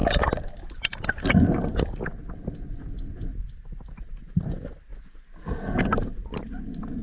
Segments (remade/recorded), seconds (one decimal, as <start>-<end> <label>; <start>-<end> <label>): 0.0-7.0 recorded